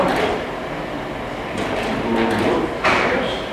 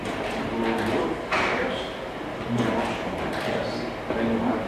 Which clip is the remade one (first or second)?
first